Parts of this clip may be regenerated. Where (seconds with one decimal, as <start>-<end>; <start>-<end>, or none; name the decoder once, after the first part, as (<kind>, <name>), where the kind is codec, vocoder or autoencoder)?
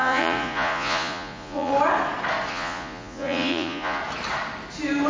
0.0-1.7 (vocoder, Vocos); 2.5-4.0